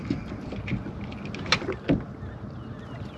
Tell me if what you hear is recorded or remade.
recorded